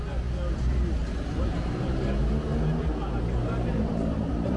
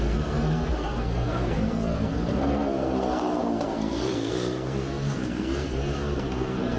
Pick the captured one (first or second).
first